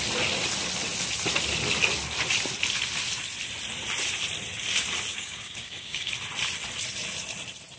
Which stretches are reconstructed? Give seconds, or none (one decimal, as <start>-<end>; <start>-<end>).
5.1-6.1